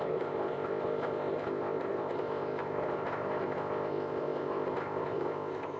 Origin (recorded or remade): remade